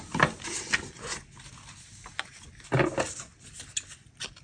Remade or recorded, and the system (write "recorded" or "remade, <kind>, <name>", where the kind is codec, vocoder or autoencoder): recorded